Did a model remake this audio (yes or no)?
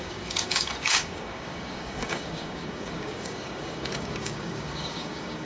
yes